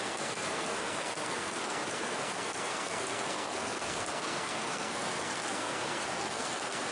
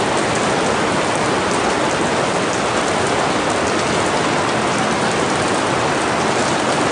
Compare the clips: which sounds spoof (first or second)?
first